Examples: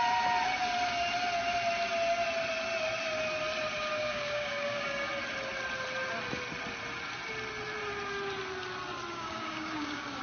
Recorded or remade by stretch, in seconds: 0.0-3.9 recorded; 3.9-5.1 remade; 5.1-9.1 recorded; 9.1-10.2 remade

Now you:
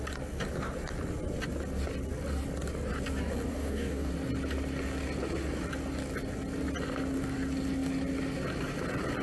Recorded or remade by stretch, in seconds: 0.0-3.5 recorded; 3.5-4.1 remade; 4.1-9.2 recorded

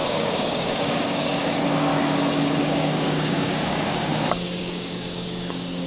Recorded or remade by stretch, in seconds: 0.0-1.9 remade; 1.9-2.6 recorded; 2.6-4.1 remade; 4.1-4.6 recorded; 4.6-5.9 remade

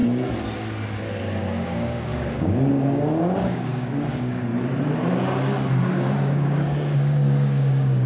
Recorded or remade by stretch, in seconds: 0.0-1.2 recorded; 1.2-4.5 remade; 4.5-5.7 recorded; 5.7-8.1 remade

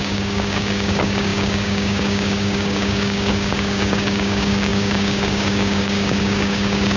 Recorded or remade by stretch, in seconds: 0.0-7.0 remade

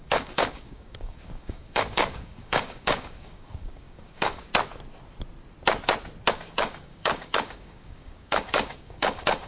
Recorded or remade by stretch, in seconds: 0.0-4.5 remade; 4.5-6.3 recorded; 6.3-9.5 remade

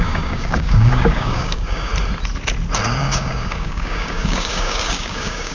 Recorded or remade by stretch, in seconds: 0.0-1.9 remade; 1.9-3.0 recorded; 3.0-5.5 remade